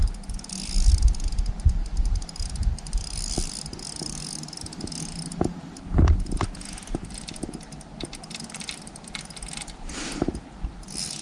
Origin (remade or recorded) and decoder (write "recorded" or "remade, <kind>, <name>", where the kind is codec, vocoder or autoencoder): recorded